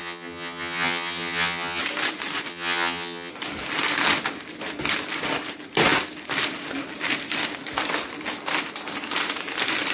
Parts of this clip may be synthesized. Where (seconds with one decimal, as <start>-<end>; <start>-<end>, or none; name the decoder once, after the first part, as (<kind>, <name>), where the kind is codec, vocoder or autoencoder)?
0.0-1.8 (vocoder, HiFi-GAN); 2.5-3.3